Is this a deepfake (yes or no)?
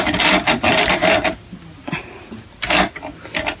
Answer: no